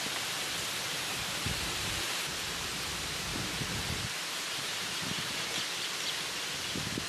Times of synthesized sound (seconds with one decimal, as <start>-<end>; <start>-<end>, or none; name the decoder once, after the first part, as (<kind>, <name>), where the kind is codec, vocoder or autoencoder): 1.1-2.7 (vocoder, BigVGAN v2); 3.3-5.6